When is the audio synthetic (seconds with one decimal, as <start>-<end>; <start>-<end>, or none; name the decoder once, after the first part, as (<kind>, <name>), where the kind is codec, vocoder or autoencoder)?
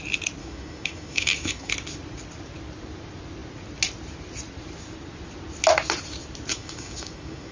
0.4-1.7 (autoencoder, DAC-VAE); 6.5-7.5